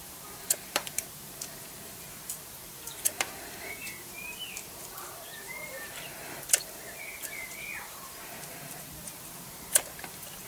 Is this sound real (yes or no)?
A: no